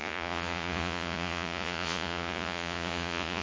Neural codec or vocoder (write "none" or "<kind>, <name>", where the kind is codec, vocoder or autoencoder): vocoder, Vocos